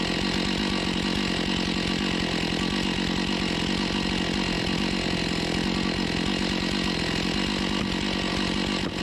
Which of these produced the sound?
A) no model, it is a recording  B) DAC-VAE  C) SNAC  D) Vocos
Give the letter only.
A